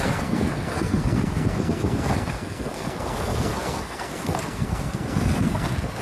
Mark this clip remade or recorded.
remade